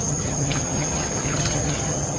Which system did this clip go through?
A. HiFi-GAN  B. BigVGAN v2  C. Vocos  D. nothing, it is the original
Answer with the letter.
A